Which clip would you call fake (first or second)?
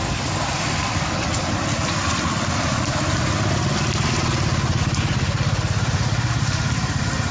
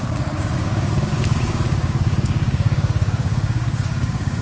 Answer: second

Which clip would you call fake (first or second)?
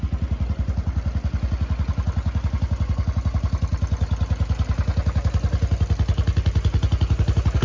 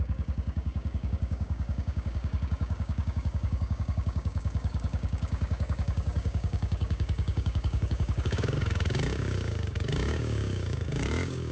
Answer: second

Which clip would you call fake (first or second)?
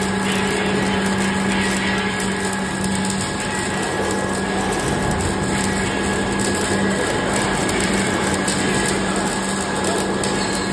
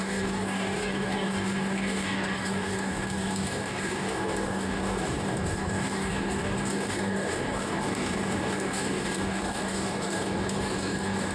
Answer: second